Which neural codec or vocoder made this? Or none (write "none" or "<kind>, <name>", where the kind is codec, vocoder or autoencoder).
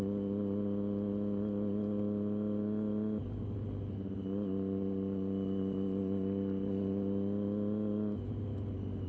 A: none